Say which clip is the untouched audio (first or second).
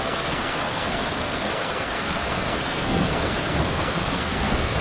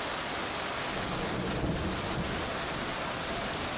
second